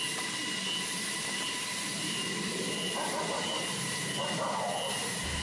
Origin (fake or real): real